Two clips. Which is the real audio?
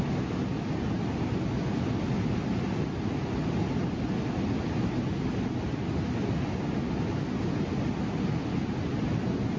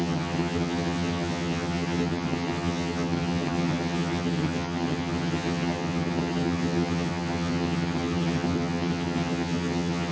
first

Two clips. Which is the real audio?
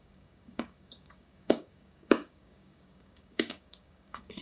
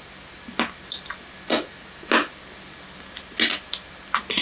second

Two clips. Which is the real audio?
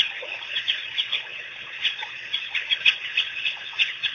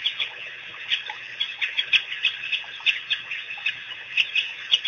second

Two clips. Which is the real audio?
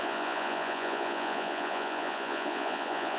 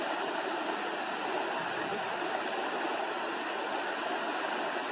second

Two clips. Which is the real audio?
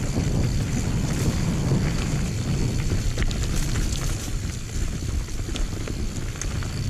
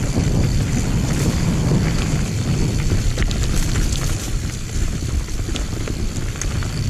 first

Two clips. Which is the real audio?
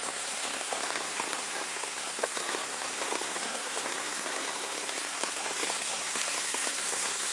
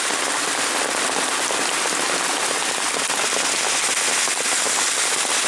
second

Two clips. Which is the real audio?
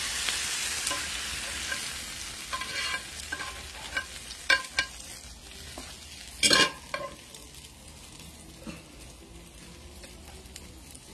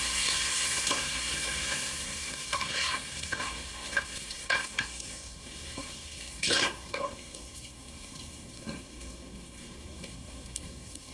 first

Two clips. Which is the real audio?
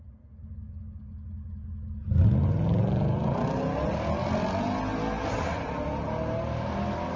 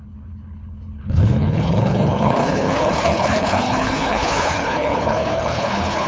first